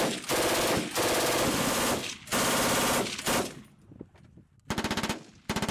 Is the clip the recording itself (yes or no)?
yes